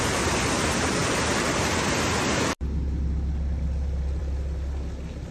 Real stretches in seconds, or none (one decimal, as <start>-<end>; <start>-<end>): 0.0-5.3

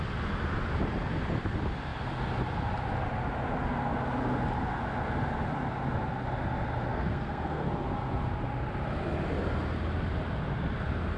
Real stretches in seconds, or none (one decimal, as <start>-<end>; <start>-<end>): 0.0-6.9; 7.7-11.2

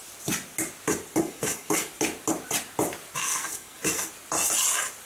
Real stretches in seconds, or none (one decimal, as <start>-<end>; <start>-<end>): 0.0-1.2; 1.9-3.2; 4.1-5.1

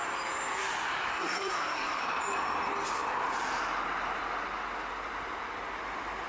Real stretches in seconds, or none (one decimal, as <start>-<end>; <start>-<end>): 0.0-1.1; 2.0-6.3

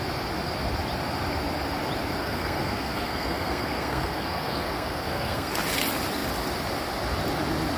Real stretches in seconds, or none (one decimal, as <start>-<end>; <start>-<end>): 0.0-2.2; 5.5-7.8